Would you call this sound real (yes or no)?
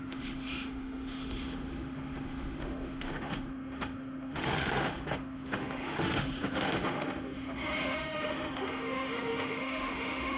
no